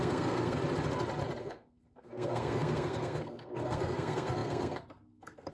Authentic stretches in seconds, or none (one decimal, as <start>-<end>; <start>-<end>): 0.6-1.4